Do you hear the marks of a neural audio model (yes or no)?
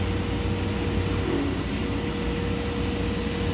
no